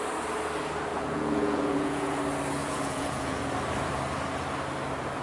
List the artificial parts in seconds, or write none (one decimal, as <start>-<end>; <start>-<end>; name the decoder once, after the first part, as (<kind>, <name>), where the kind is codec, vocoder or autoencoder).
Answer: 0.9-2.2 (vocoder, Vocos); 2.6-3.5